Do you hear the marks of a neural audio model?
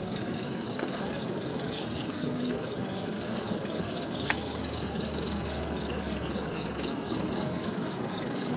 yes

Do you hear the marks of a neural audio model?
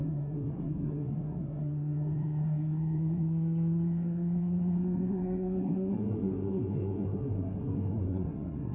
yes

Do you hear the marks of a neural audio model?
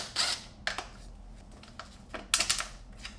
no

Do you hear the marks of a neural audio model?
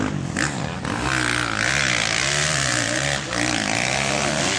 no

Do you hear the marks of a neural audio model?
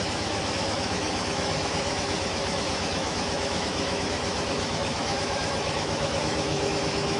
yes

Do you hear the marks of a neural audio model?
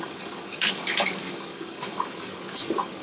yes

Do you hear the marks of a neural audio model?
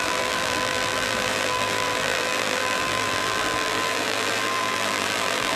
yes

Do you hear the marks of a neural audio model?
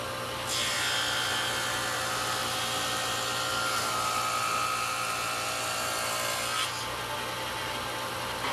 no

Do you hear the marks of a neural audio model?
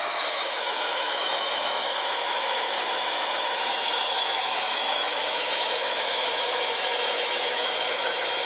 yes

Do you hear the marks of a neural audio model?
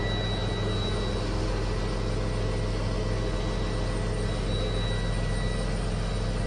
no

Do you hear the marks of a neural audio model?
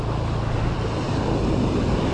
no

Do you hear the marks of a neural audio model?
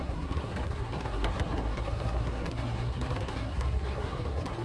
yes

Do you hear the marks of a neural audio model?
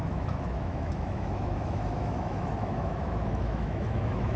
yes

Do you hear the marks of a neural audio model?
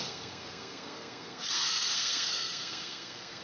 yes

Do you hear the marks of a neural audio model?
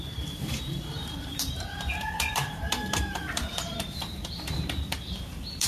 yes